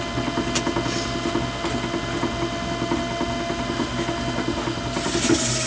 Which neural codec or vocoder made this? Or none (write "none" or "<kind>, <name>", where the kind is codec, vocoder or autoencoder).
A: none